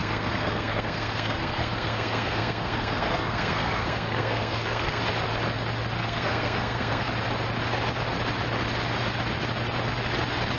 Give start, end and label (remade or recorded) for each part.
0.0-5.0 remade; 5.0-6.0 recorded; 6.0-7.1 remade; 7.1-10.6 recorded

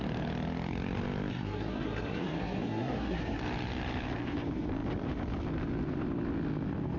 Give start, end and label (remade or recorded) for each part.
0.0-1.3 recorded; 1.3-3.4 remade; 3.4-7.0 recorded

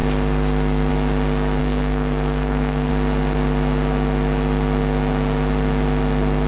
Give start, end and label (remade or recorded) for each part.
0.0-1.6 recorded; 1.6-2.9 remade; 2.9-6.5 recorded

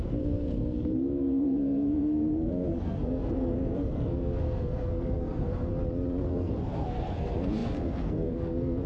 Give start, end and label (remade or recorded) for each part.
0.0-5.7 remade; 5.7-6.3 recorded; 6.3-8.9 remade

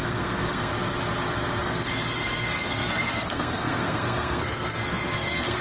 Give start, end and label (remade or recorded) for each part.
0.0-0.7 remade; 0.7-1.6 recorded; 1.6-5.6 remade

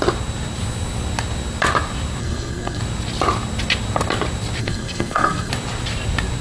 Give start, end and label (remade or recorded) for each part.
0.0-2.2 recorded; 2.2-2.8 remade; 2.8-4.6 recorded; 4.6-5.5 remade; 5.5-6.4 recorded

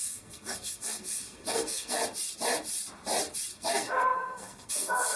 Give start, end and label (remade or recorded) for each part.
0.0-2.0 remade; 2.0-3.5 recorded; 3.5-5.2 remade

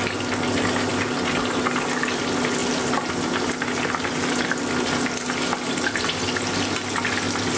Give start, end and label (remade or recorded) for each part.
0.0-7.6 recorded